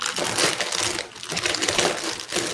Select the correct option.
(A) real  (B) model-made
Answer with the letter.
A